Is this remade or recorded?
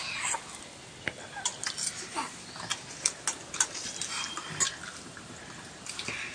recorded